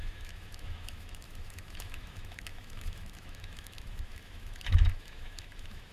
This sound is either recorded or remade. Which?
remade